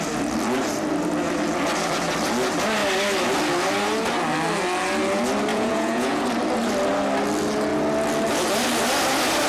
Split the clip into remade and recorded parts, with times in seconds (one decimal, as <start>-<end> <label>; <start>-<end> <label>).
0.0-5.5 recorded; 5.5-6.2 remade; 6.2-9.5 recorded